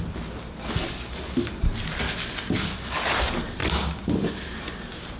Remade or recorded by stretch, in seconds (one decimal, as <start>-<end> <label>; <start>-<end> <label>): 0.0-5.2 recorded

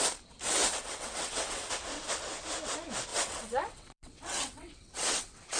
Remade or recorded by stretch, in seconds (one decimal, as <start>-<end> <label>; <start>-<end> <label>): 0.0-0.6 recorded; 0.6-1.7 remade; 1.7-3.1 recorded; 3.1-5.6 remade

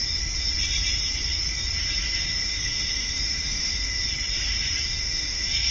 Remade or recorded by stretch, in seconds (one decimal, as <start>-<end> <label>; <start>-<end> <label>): 0.0-2.2 recorded; 2.2-4.0 remade; 4.0-4.9 recorded; 4.9-5.7 remade

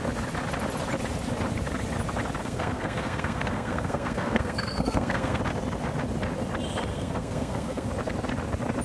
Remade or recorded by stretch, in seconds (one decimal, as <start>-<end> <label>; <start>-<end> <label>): 0.0-2.4 recorded; 2.4-5.4 remade; 5.4-6.9 recorded; 6.9-7.9 remade; 7.9-8.8 recorded

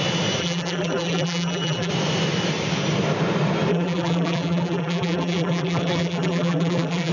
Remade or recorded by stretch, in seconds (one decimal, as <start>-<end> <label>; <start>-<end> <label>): 0.0-0.4 recorded; 0.4-1.9 remade; 1.9-3.7 recorded; 3.7-7.1 remade

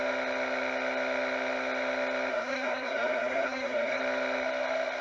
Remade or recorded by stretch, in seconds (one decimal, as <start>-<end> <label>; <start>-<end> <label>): 0.0-2.3 recorded; 2.3-4.0 remade; 4.0-5.0 recorded

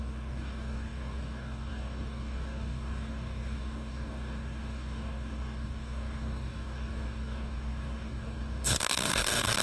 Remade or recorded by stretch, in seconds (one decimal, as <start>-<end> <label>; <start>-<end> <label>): 0.0-9.6 remade